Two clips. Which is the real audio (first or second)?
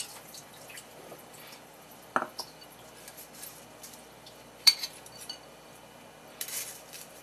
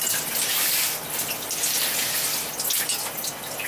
second